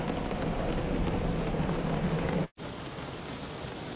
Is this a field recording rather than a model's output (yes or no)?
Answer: yes